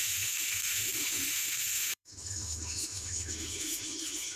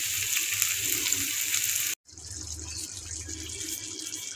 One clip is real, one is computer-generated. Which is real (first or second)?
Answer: second